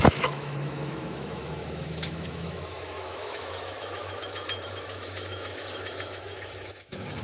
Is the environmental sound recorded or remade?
remade